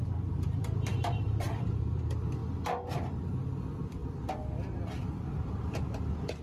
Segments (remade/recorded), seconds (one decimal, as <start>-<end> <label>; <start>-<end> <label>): 0.0-0.9 recorded; 0.9-2.0 remade; 2.0-4.0 recorded; 4.0-5.1 remade; 5.1-6.4 recorded